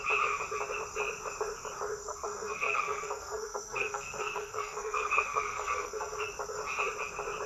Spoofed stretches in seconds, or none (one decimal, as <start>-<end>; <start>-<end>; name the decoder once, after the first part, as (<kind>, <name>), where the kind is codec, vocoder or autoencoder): 2.0-6.3 (codec, SNAC)